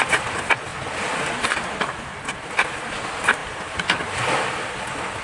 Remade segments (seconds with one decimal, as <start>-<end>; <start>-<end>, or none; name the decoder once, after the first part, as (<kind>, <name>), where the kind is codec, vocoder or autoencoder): 0.7-1.4 (vocoder, BigVGAN v2); 3.4-4.3